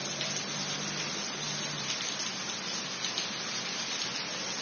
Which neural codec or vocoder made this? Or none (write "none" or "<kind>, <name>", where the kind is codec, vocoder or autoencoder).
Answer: none